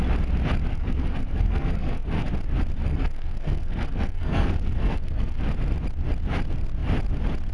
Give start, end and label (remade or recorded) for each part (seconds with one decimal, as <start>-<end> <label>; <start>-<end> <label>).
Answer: 0.0-0.7 recorded; 0.7-2.3 remade; 2.3-2.9 recorded; 2.9-5.4 remade; 5.4-7.5 recorded